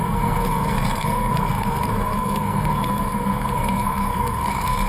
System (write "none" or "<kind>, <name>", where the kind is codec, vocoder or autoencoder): codec, SNAC